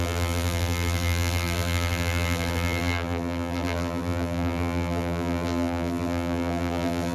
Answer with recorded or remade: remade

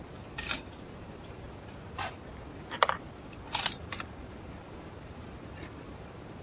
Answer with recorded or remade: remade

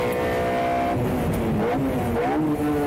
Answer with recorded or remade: recorded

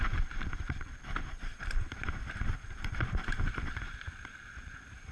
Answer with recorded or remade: remade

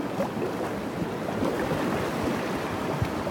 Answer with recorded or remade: recorded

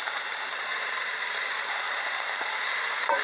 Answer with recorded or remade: remade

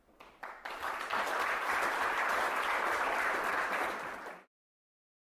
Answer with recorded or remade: remade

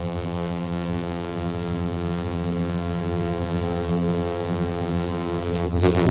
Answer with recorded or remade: remade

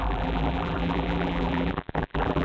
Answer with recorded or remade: remade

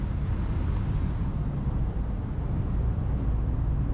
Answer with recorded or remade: recorded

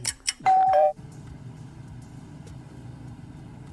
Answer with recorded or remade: remade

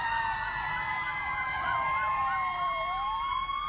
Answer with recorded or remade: remade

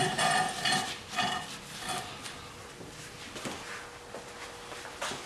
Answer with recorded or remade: recorded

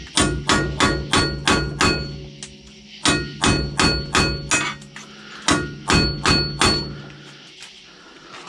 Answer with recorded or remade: recorded